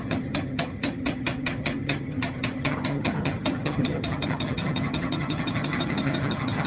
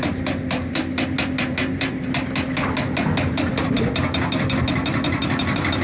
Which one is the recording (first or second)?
second